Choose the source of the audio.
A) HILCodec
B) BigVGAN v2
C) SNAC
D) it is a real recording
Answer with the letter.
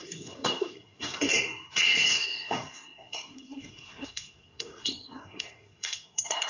C